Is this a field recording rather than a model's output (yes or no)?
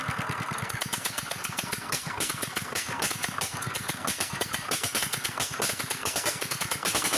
no